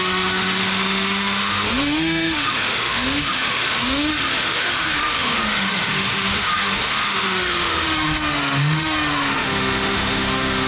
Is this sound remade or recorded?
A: remade